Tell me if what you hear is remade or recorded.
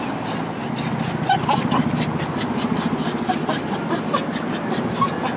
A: recorded